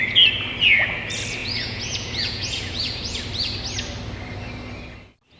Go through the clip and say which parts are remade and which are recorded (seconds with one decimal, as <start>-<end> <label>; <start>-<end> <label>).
0.0-1.4 recorded; 1.4-3.2 remade; 3.2-5.4 recorded